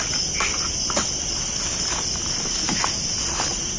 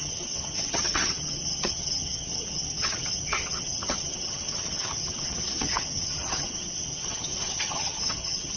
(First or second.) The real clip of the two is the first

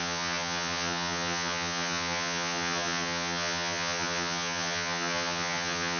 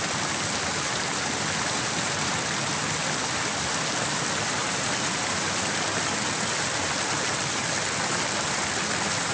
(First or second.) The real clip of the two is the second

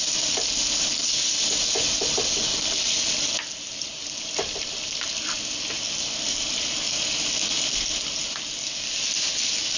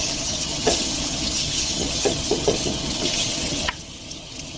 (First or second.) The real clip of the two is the first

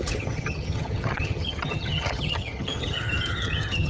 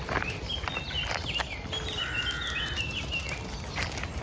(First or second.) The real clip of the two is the second